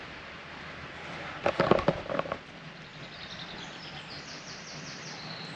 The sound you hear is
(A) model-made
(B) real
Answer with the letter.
A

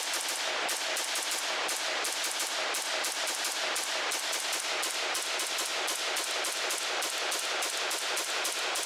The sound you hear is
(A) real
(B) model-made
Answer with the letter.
A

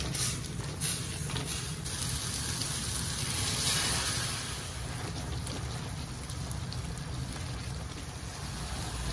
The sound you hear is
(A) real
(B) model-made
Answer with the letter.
A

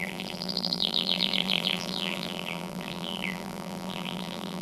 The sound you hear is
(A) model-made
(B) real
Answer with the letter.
A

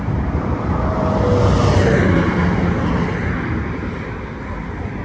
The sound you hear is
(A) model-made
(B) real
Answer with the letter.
B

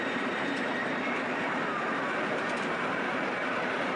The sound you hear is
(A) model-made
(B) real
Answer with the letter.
A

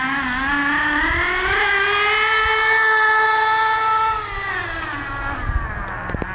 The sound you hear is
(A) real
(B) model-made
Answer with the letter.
A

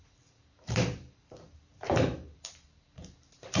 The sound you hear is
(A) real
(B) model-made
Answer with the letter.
B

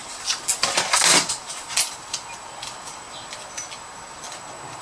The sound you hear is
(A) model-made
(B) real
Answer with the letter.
B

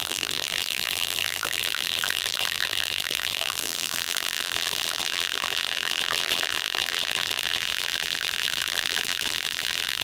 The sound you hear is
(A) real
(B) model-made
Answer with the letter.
B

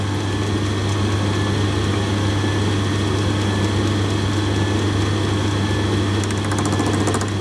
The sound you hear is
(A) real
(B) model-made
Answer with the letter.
A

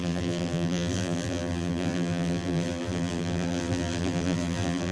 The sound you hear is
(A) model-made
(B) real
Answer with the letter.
A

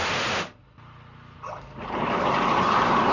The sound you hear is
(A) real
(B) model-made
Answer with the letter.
A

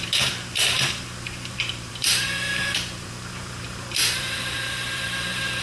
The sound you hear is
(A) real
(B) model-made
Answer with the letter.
B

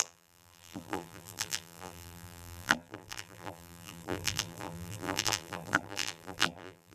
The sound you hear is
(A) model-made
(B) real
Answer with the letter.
A